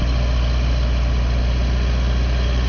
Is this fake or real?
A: real